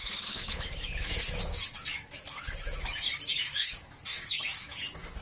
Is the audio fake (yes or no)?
yes